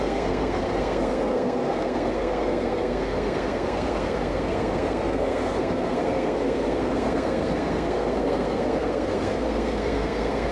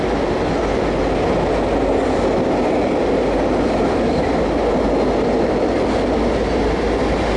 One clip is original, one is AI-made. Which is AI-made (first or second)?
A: first